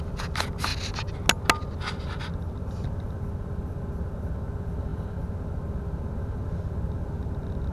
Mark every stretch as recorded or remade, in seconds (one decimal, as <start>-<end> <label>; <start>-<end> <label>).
0.0-7.7 recorded

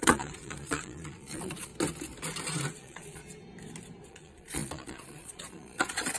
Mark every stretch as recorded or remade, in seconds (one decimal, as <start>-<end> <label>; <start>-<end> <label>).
0.0-1.7 remade; 1.7-2.8 recorded; 2.8-3.2 remade; 3.2-4.1 recorded; 4.1-6.2 remade